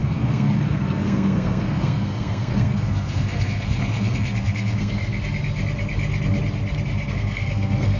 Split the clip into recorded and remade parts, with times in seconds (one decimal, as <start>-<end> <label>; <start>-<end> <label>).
0.0-5.0 remade; 5.0-7.1 recorded; 7.1-8.0 remade